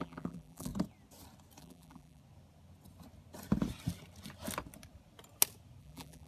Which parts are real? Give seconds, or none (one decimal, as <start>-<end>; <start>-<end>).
0.7-1.6; 2.2-5.8